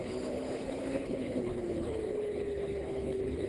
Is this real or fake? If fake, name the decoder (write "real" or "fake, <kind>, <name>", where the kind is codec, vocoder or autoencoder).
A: fake, codec, HILCodec